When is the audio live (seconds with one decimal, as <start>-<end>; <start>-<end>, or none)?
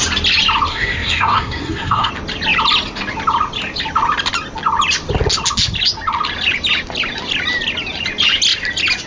0.0-0.7; 2.1-9.1